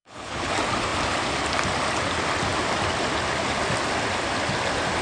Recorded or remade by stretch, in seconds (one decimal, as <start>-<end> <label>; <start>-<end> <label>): 0.0-0.5 remade; 0.5-5.0 recorded